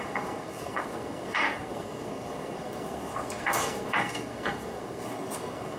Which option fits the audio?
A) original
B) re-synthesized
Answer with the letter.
B